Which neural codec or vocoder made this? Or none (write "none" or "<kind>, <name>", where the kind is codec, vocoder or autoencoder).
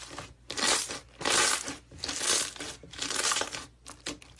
none